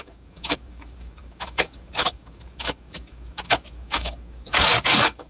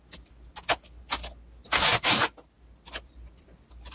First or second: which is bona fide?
second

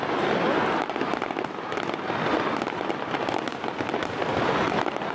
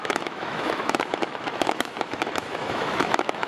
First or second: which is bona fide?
first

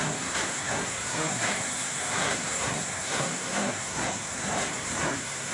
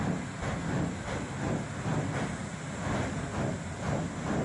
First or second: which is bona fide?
second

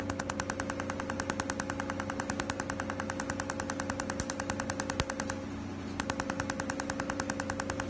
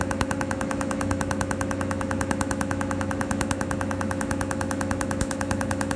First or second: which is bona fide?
first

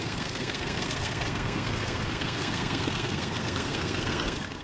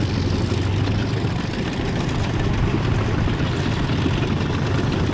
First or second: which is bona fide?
second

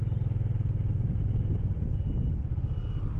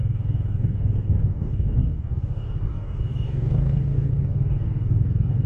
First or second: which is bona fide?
first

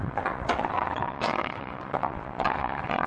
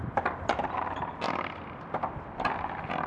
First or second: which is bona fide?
second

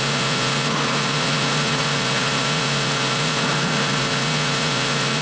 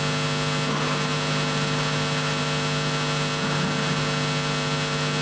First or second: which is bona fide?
second